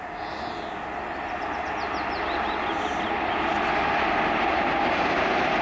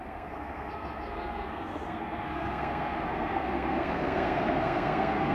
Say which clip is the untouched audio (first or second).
first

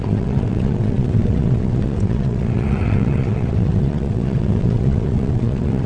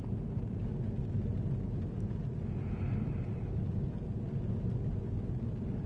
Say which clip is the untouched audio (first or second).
second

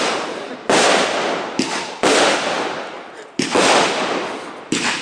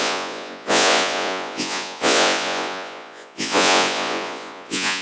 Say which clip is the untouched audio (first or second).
first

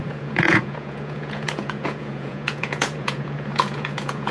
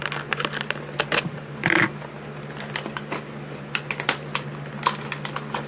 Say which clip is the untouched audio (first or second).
second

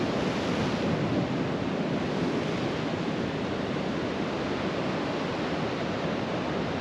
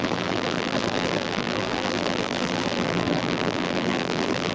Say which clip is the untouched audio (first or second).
first